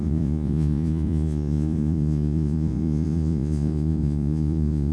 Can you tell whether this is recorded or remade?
remade